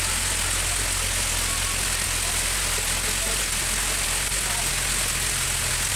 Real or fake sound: real